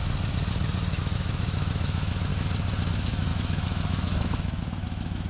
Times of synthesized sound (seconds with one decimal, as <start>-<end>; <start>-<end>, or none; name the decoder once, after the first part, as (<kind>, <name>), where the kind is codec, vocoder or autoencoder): 0.9-2.3 (autoencoder, DAC-VAE); 2.9-5.3